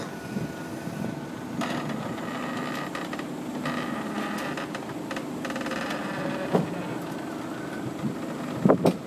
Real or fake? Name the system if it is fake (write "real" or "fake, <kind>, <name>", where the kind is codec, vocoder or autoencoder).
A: real